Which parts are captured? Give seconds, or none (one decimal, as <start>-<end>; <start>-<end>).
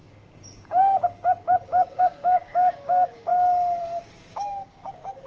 3.3-3.8